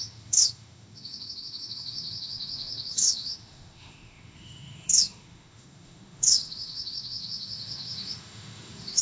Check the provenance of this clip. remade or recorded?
remade